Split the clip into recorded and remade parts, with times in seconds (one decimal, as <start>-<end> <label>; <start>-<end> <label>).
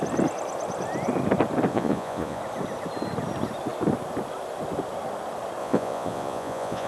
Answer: 0.0-1.7 recorded; 1.7-2.4 remade; 2.4-5.6 recorded; 5.6-6.9 remade